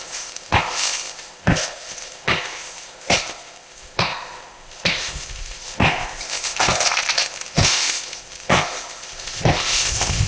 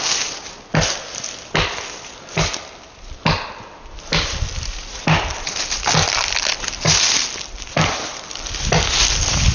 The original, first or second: second